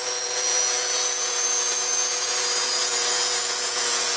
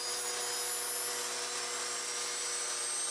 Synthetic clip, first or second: first